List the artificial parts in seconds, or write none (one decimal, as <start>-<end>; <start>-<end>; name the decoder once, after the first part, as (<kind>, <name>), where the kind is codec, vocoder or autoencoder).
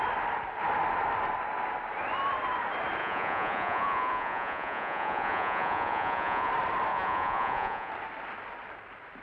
3.0-6.5 (vocoder, Vocos); 6.9-7.9